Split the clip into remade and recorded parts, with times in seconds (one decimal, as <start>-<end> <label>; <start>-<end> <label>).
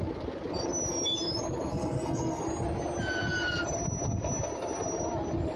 0.0-1.7 recorded; 1.7-2.4 remade; 2.4-5.6 recorded